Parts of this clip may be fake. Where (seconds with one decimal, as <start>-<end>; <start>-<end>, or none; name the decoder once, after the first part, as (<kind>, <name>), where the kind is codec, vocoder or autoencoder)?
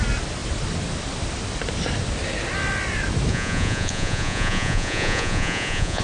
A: 3.3-6.0 (vocoder, Vocos)